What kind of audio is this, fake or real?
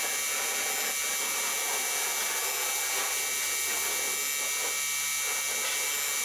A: real